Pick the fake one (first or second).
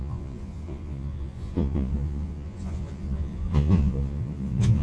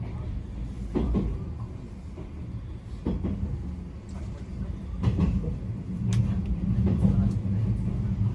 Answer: first